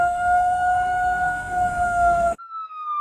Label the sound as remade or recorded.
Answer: remade